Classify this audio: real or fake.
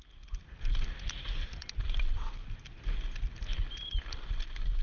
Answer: real